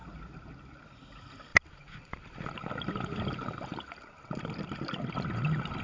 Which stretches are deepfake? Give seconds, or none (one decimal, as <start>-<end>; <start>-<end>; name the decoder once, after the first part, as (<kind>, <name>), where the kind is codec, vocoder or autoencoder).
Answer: 1.5-2.9 (vocoder, BigVGAN v2); 3.7-4.4